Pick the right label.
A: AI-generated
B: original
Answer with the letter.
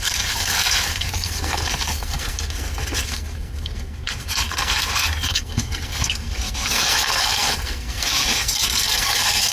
A